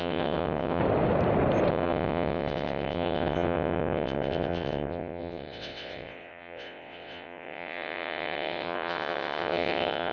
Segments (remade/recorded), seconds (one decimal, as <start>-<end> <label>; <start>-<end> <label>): 0.0-0.8 remade; 0.8-1.7 recorded; 1.7-10.1 remade